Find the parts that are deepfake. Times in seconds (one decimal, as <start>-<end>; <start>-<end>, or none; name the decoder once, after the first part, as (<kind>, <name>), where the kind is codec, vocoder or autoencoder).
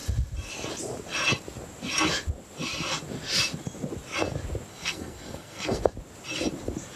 4.7-5.8 (codec, SNAC)